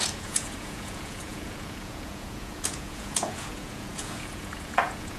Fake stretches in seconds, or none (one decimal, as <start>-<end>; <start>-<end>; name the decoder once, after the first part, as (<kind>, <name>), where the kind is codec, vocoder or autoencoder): 0.0-5.2 (vocoder, Vocos)

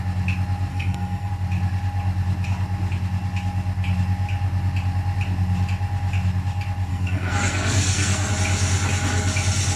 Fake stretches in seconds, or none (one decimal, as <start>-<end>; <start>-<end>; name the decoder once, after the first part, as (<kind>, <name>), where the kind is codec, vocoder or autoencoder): 0.7-1.3 (codec, SNAC); 6.9-8.3

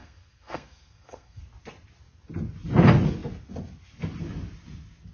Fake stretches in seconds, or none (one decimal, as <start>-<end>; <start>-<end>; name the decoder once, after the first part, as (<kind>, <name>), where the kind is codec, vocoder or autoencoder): 0.0-1.4 (codec, SNAC)